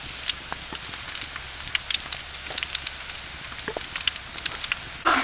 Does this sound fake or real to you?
real